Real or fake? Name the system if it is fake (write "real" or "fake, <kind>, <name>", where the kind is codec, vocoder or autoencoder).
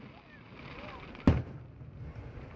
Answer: real